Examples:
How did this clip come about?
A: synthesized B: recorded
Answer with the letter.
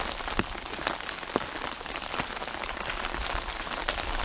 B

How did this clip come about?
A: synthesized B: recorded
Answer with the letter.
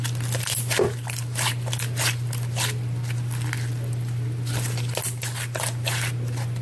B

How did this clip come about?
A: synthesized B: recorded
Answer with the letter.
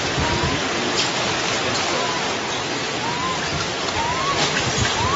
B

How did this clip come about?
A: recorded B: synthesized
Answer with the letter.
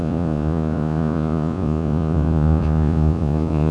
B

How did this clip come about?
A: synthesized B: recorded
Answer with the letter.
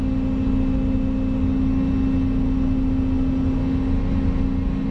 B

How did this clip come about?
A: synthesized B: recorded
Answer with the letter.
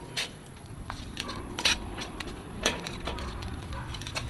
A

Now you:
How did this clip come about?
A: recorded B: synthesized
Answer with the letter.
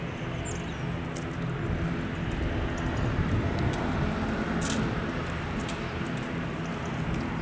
A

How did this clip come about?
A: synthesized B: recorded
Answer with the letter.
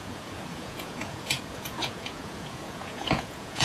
A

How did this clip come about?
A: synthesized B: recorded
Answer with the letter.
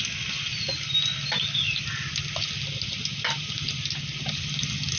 B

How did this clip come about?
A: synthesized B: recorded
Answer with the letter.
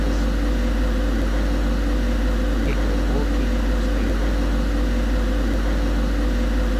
B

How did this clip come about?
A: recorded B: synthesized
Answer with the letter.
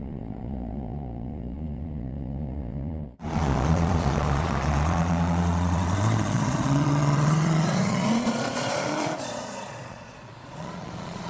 B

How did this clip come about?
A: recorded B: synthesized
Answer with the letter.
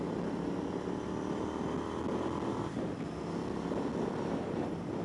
A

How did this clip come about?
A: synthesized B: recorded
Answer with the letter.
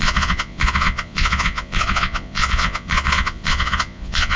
A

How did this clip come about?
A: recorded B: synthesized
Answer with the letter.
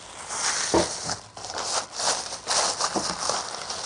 A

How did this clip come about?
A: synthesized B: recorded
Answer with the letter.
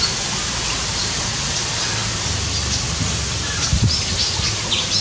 B